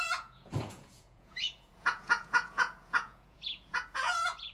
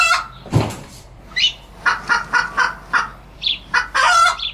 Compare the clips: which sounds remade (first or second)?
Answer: first